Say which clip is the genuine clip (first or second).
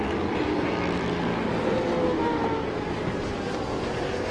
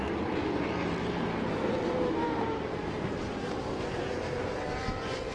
first